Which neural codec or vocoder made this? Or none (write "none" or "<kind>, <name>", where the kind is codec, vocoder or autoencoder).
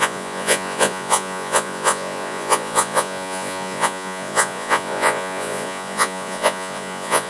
vocoder, Vocos